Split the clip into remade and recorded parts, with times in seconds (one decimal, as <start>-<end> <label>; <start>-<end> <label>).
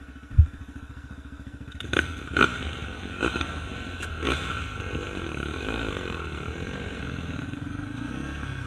0.0-8.7 remade